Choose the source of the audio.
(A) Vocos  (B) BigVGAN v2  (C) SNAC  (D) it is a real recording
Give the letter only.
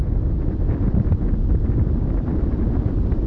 D